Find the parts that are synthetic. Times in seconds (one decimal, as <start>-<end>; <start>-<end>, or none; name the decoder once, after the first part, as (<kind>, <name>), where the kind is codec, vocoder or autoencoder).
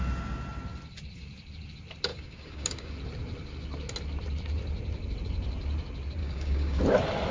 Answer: 2.1-2.9 (codec, DAC); 6.2-6.8